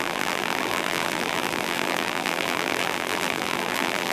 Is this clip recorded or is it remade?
remade